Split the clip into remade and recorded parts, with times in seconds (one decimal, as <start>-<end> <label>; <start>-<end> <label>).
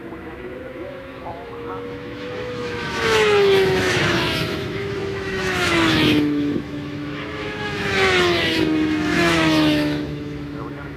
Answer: 0.0-11.0 remade